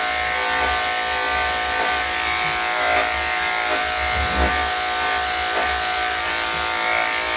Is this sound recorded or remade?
recorded